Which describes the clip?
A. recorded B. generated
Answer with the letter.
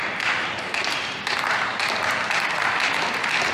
B